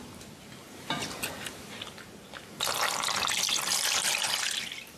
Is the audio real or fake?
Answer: fake